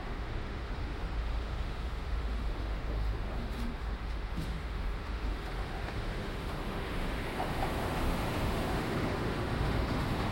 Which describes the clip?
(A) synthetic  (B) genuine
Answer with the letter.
A